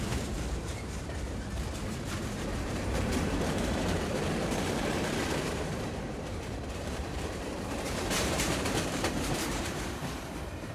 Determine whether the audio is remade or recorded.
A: remade